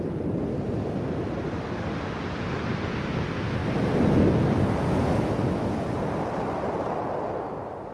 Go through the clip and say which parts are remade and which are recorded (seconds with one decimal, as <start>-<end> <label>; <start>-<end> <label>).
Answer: 0.0-7.9 recorded